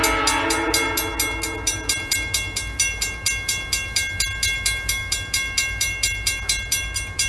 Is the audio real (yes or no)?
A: yes